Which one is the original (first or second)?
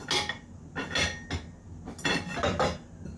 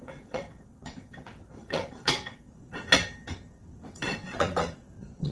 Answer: first